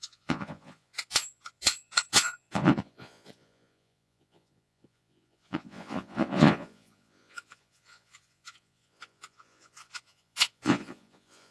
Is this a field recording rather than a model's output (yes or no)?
no